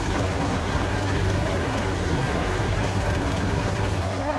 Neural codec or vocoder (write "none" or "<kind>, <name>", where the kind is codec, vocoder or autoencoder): codec, SNAC